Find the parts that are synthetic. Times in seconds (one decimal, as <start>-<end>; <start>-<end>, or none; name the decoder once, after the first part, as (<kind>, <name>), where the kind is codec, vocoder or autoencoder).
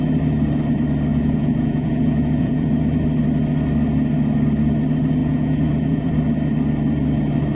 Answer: 1.1-2.7 (vocoder, Vocos); 5.2-6.1